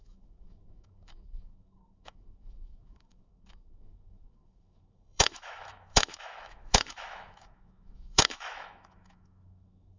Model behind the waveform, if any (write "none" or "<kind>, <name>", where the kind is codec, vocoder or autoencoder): autoencoder, DAC-VAE